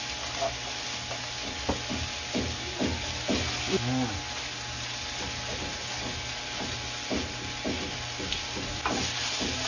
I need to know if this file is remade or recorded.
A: recorded